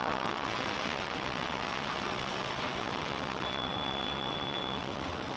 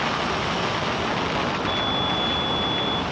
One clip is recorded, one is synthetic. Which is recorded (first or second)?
second